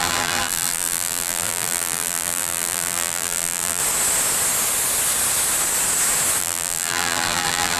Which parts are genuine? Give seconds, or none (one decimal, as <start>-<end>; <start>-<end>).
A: 3.8-6.4